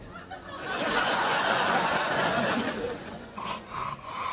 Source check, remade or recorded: remade